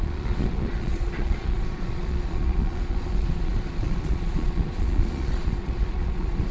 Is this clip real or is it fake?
fake